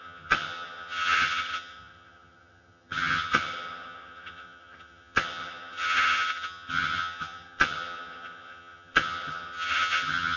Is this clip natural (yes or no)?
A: no